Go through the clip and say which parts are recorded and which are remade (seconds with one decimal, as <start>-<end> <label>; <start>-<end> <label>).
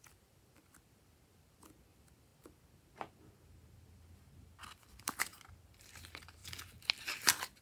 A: 0.0-2.3 remade; 2.3-4.7 recorded; 4.7-5.3 remade; 5.3-5.8 recorded; 5.8-6.4 remade; 6.4-6.9 recorded; 6.9-7.6 remade